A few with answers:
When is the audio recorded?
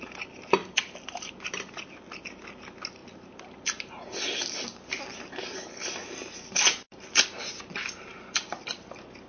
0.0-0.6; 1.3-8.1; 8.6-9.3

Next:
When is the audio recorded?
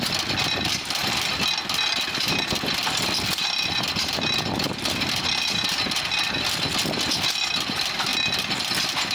0.0-9.1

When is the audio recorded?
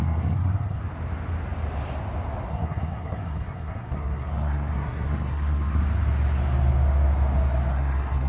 0.8-2.5; 5.8-7.7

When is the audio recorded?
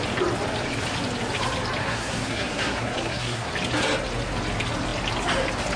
0.0-1.8; 3.5-5.8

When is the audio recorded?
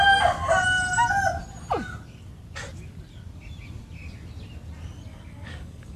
0.0-5.1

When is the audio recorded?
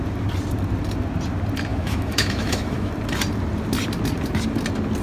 0.0-1.7; 2.9-5.0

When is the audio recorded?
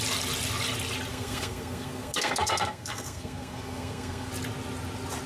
0.0-1.1; 4.3-5.3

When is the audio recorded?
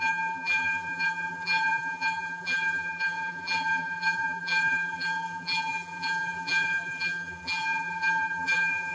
none